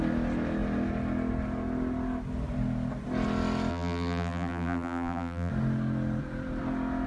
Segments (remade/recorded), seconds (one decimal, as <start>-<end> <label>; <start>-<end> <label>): 0.0-3.7 recorded; 3.7-5.5 remade; 5.5-7.1 recorded